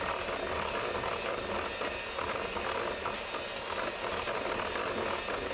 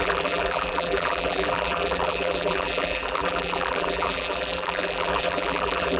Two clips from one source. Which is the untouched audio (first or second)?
first